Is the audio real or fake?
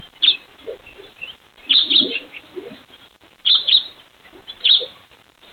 fake